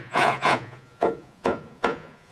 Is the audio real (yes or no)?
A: no